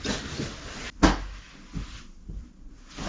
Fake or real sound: real